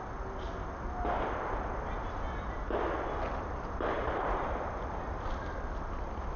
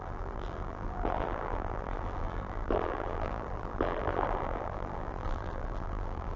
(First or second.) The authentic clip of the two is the first